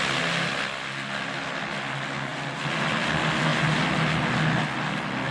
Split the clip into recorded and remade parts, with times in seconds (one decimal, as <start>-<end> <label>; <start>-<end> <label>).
0.0-5.3 recorded

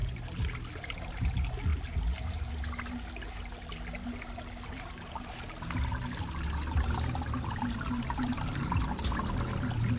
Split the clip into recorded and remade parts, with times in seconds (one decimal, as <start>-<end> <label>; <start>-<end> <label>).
0.0-10.0 recorded

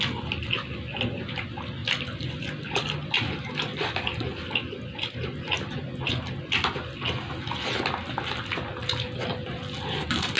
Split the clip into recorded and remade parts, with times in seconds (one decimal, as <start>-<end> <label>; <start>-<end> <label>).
0.0-1.8 recorded; 1.8-3.8 remade; 3.8-10.4 recorded

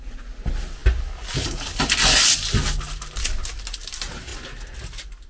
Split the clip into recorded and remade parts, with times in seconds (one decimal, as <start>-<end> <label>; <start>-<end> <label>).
0.0-5.3 recorded